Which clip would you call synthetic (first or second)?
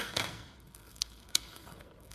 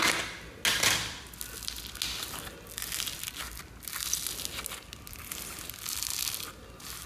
first